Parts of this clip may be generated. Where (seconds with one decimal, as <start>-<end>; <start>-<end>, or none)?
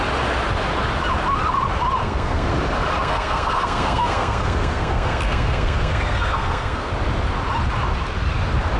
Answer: 2.0-2.5; 3.0-6.9